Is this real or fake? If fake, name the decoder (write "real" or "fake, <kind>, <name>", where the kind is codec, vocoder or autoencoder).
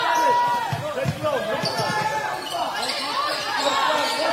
real